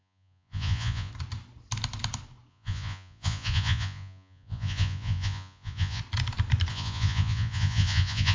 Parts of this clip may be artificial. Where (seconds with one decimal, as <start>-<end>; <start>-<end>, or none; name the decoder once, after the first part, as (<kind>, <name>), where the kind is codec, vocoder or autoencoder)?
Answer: 0.0-1.1 (vocoder, Vocos); 2.5-6.0; 6.7-8.3